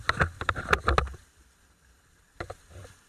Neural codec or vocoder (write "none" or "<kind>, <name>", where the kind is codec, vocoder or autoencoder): none